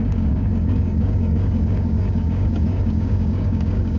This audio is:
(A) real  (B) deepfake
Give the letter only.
B